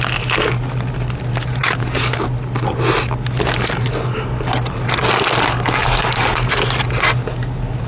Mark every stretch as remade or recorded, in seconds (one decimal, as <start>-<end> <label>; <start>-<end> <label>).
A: 0.0-1.6 recorded; 1.6-2.2 remade; 2.2-5.8 recorded; 5.8-6.5 remade; 6.5-7.9 recorded